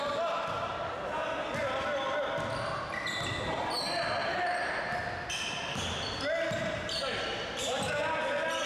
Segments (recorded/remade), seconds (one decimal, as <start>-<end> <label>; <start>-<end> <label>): 0.0-8.7 recorded